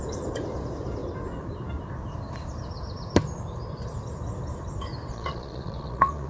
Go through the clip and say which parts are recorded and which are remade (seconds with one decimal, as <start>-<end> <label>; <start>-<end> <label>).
0.0-5.1 recorded; 5.1-6.3 remade

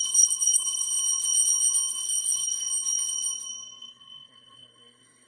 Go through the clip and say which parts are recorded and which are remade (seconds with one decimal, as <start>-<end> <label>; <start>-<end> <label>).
0.0-0.9 remade; 0.9-1.9 recorded; 1.9-2.7 remade; 2.7-3.8 recorded; 3.8-5.3 remade

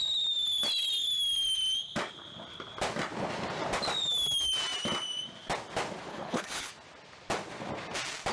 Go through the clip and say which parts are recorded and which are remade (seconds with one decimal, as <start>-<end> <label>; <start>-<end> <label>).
0.0-6.1 recorded; 6.1-6.7 remade; 6.7-8.3 recorded

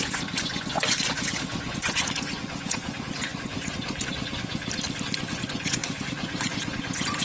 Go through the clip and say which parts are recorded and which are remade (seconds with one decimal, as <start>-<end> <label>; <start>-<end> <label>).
0.0-4.6 remade; 4.6-5.3 recorded; 5.3-7.2 remade

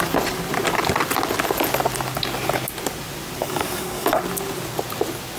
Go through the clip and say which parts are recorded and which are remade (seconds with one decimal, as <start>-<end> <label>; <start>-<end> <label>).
0.0-3.4 recorded; 3.4-4.2 remade; 4.2-5.4 recorded